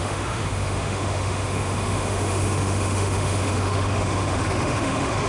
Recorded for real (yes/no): no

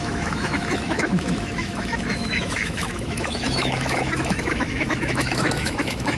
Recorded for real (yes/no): no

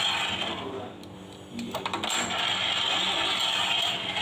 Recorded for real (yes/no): yes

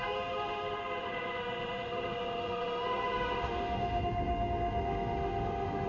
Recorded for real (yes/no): no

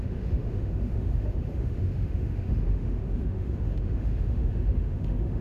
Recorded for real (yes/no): no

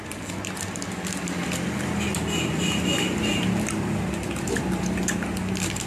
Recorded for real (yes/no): yes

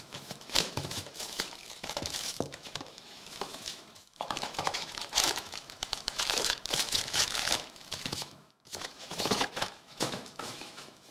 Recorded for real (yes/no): no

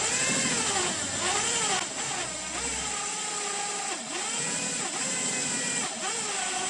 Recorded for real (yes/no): yes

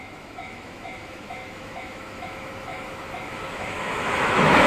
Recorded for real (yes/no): no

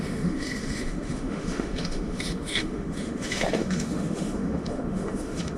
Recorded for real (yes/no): no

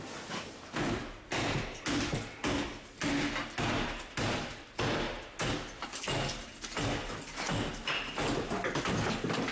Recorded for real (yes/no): yes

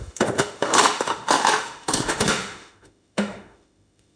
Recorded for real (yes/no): no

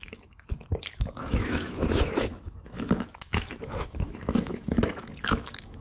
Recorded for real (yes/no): no